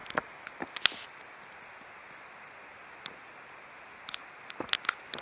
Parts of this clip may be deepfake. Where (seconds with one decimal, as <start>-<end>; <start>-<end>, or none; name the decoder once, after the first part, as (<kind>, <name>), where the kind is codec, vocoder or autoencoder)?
none